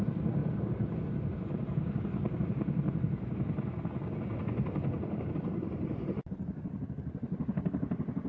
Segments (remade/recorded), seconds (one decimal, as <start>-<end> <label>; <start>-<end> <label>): 0.0-8.3 recorded